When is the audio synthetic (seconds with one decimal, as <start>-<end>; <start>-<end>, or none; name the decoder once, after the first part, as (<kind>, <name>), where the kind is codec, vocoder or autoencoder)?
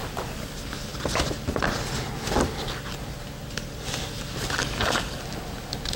4.6-5.2 (codec, DAC)